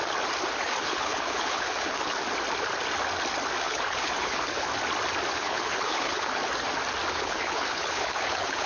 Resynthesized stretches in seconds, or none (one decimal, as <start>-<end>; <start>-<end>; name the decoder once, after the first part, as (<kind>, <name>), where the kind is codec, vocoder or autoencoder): 0.6-2.2 (codec, HILCodec); 3.6-4.7; 5.3-6.4; 7.1-8.7